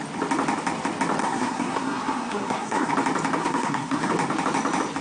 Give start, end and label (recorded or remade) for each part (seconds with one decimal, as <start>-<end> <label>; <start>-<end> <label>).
0.0-1.2 recorded; 1.2-2.9 remade; 2.9-3.4 recorded; 3.4-4.1 remade; 4.1-5.0 recorded